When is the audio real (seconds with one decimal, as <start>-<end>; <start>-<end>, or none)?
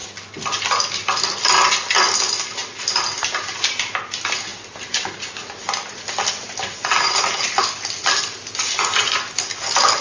0.0-10.0